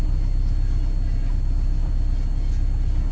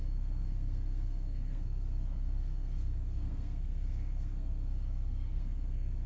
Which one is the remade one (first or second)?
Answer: second